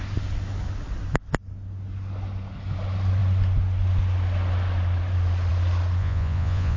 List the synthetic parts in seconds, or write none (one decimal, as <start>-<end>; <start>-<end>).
6.0-6.8